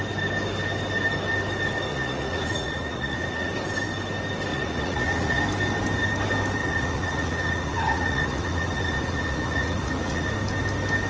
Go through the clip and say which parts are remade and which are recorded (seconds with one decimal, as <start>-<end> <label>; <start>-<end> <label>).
0.0-1.9 recorded; 1.9-3.5 remade; 3.5-4.5 recorded; 4.5-5.4 remade; 5.4-6.6 recorded; 6.6-10.3 remade; 10.3-11.1 recorded